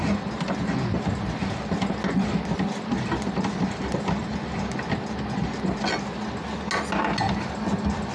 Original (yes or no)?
yes